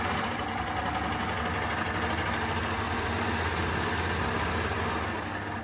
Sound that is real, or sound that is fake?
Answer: real